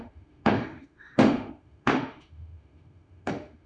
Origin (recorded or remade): remade